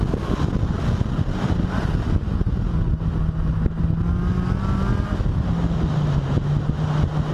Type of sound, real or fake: real